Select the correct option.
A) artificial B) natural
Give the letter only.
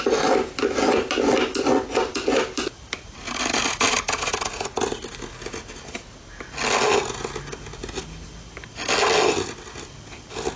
B